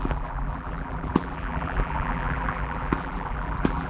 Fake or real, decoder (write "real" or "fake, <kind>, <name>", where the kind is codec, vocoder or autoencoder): fake, vocoder, BigVGAN v2